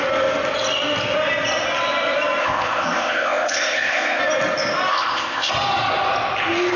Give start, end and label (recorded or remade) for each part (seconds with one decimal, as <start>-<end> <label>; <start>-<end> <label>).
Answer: 0.0-2.4 recorded; 2.4-4.2 remade; 4.2-4.9 recorded; 4.9-5.5 remade; 5.5-6.8 recorded